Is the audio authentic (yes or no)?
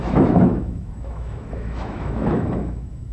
no